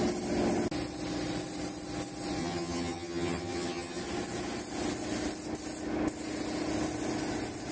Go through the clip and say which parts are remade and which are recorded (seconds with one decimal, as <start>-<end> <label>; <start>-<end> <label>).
0.0-2.4 recorded; 2.4-4.0 remade; 4.0-7.7 recorded